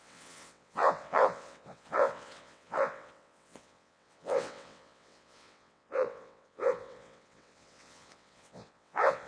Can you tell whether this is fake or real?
fake